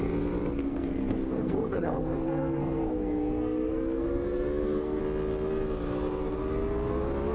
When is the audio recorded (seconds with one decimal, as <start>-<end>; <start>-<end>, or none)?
0.0-0.6; 5.0-7.3